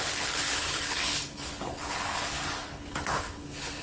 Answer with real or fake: fake